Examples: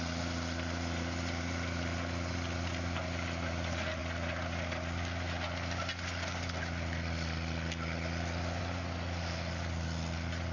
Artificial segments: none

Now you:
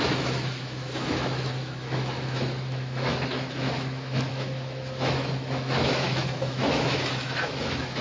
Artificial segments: 0.0-8.0 (autoencoder, DAC-VAE)

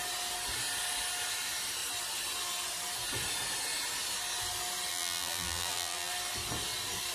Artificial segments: 4.9-6.1 (vocoder, BigVGAN v2)

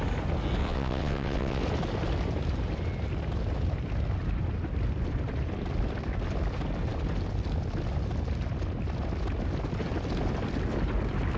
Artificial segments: 0.6-1.6 (vocoder, WaveNeXt)

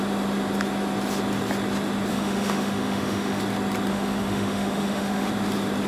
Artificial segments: 2.1-3.4 (autoencoder, DAC-VAE); 3.9-5.3

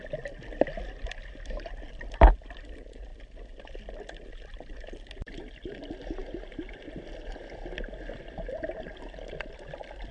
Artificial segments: none